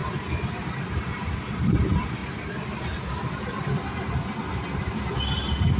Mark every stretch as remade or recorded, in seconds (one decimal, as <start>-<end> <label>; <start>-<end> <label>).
0.0-5.8 recorded